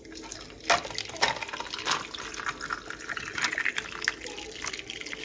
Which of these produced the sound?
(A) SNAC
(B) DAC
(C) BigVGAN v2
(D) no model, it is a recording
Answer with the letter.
D